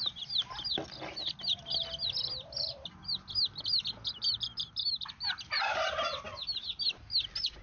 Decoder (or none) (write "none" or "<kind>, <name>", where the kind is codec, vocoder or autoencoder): none